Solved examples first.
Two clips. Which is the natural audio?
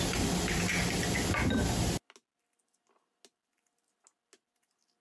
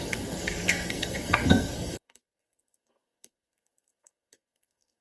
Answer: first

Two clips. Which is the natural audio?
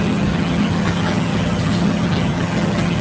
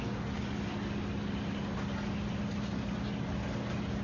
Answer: second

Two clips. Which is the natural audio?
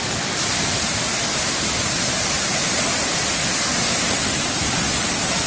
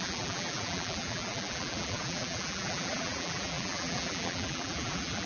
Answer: first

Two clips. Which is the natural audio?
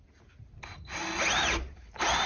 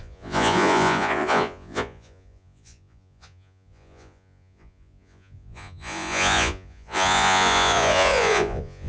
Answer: first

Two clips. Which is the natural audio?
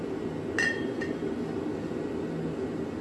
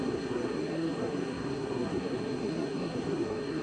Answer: first